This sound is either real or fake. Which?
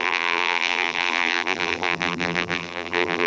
fake